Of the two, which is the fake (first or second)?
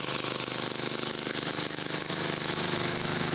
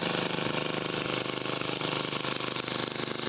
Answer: first